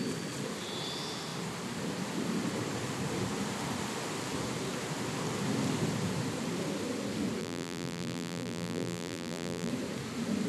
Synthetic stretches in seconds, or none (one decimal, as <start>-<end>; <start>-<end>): 7.4-9.7